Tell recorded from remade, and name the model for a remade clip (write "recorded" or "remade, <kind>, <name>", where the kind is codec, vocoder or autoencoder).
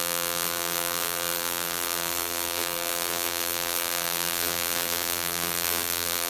remade, vocoder, BigVGAN v2